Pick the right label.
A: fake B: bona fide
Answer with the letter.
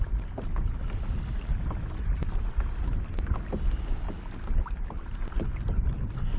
B